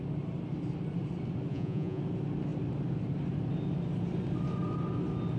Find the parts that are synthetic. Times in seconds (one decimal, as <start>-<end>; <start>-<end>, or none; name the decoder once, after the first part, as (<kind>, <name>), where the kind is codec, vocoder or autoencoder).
1.5-2.0 (vocoder, Vocos)